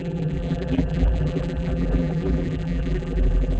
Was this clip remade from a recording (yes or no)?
yes